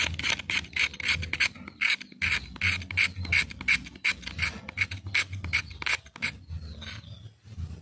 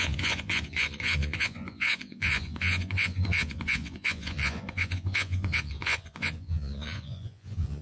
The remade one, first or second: second